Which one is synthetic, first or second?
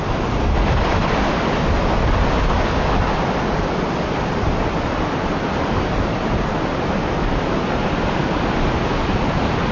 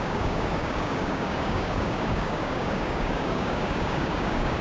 second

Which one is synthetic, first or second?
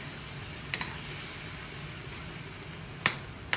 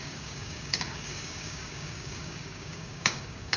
second